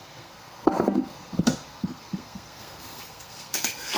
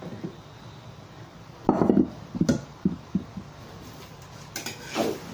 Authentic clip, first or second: second